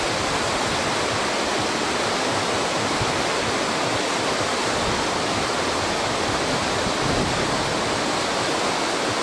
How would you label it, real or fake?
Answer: real